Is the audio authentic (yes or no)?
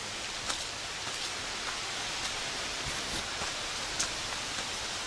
yes